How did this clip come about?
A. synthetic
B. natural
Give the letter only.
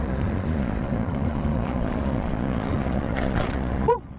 A